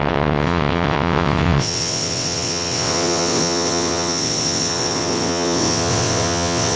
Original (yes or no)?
no